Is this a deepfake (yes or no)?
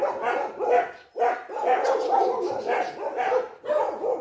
no